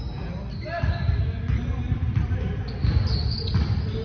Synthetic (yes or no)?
no